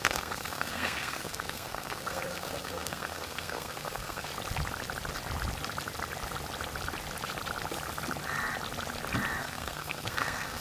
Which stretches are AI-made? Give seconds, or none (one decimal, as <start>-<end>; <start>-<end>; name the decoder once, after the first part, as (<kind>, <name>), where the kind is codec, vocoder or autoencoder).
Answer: 0.0-4.3 (codec, SNAC); 9.4-10.6